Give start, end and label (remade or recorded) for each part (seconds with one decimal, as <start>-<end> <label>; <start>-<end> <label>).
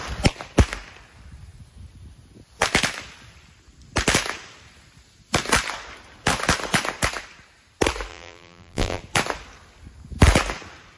0.0-8.1 recorded; 8.1-9.0 remade; 9.0-11.0 recorded